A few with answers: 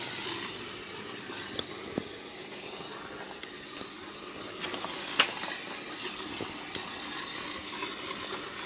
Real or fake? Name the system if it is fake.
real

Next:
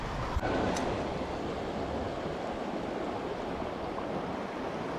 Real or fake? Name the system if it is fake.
real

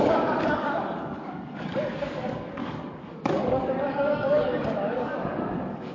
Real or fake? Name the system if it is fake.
fake, codec, DAC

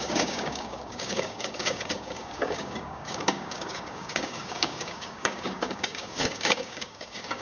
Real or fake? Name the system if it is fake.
fake, codec, DAC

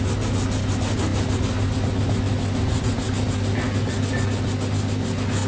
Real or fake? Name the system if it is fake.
real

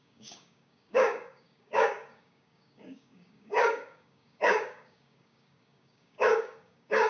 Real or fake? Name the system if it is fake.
fake, codec, DAC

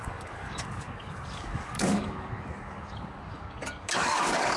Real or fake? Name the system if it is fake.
fake, codec, DAC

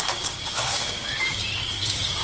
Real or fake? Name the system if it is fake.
fake, codec, DAC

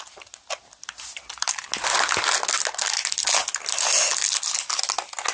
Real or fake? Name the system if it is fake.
real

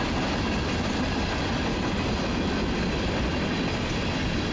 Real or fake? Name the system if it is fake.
real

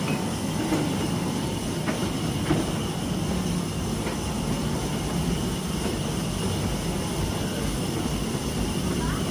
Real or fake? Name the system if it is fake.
real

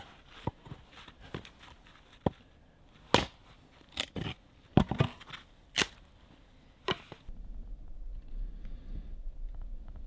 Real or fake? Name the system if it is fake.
real